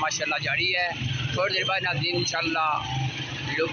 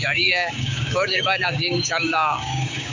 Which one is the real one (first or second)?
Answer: first